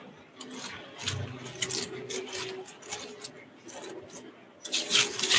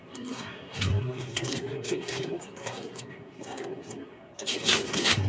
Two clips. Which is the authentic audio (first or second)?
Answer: first